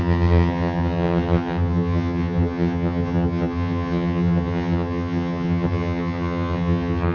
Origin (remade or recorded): remade